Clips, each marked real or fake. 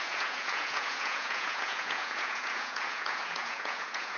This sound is fake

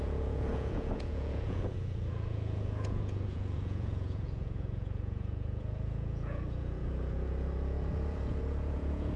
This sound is fake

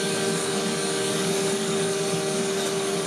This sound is fake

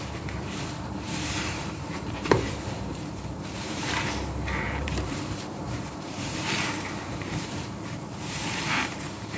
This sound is fake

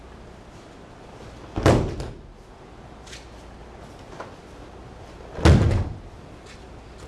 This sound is real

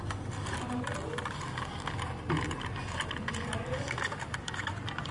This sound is real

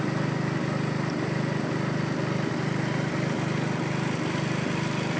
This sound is real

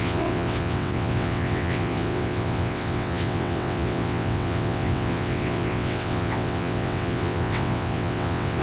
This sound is fake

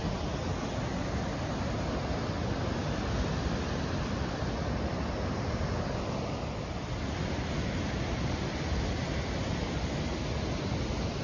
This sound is real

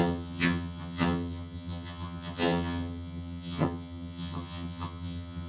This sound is fake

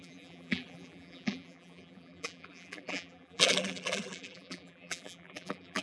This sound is fake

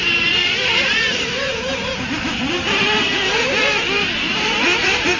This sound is fake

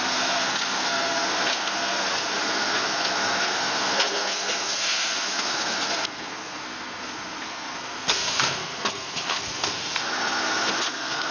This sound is fake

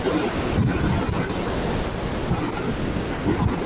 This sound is real